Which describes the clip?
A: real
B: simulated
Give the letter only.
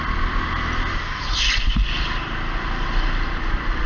A